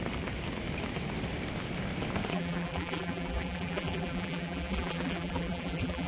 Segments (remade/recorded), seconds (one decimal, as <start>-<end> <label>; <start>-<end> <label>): 0.0-2.3 recorded; 2.3-6.1 remade